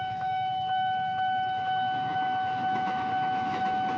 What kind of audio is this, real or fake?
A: fake